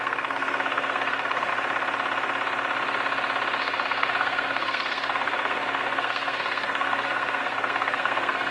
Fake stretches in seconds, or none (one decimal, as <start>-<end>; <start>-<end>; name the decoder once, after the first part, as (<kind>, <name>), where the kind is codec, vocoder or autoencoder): 0.0-1.5 (codec, SNAC); 3.6-8.5

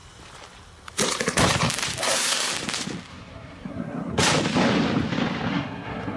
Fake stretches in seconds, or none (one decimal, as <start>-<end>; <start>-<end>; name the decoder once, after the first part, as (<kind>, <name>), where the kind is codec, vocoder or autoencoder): 2.0-2.5 (codec, SNAC); 3.1-4.2; 5.5-6.2

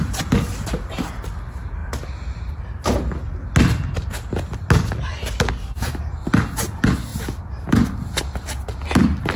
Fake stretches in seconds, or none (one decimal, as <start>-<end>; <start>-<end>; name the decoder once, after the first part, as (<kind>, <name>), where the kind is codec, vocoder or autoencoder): none

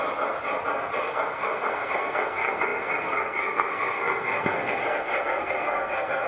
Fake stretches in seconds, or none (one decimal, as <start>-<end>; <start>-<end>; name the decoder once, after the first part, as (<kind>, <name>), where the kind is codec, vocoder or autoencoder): 1.0-6.3 (codec, SNAC)

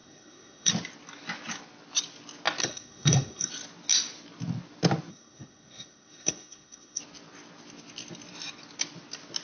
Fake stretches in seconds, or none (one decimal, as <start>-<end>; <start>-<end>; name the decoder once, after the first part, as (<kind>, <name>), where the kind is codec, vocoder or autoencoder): 0.0-0.7 (codec, SNAC); 2.6-3.5; 5.1-7.0